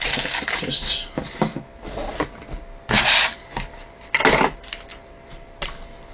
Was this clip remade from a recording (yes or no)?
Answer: no